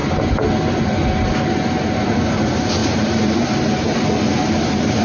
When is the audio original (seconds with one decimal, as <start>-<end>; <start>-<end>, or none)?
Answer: 0.0-5.0